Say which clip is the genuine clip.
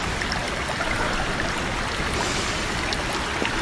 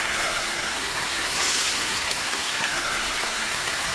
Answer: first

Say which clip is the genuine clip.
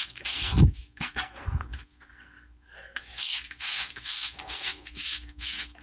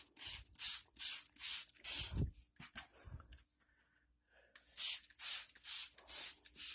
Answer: second